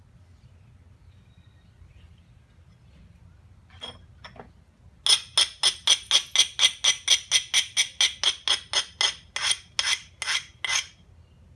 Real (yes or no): yes